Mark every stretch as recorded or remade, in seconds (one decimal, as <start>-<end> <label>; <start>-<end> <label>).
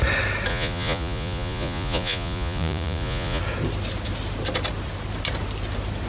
0.0-0.5 recorded; 0.5-3.4 remade; 3.4-6.1 recorded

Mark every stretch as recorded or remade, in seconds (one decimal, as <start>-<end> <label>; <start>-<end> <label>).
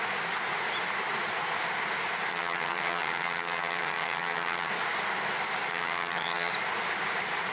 0.0-2.3 recorded; 2.3-4.7 remade; 4.7-5.7 recorded; 5.7-6.5 remade; 6.5-7.5 recorded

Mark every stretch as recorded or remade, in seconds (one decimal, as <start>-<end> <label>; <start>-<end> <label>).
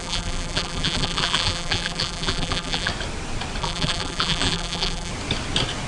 0.0-2.9 remade; 2.9-3.6 recorded; 3.6-5.1 remade; 5.1-5.9 recorded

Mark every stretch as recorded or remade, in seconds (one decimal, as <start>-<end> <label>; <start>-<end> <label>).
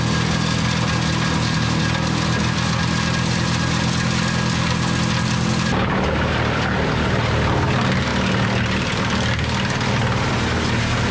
0.0-8.1 recorded; 8.1-9.0 remade; 9.0-11.1 recorded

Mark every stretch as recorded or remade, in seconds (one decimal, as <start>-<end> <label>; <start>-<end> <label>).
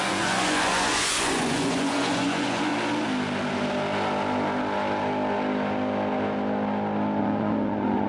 0.0-2.7 remade; 2.7-7.2 recorded; 7.2-8.1 remade